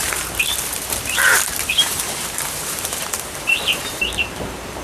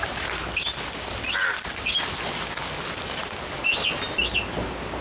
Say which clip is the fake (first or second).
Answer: first